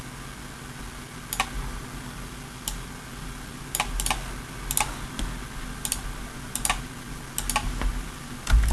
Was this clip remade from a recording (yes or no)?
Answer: no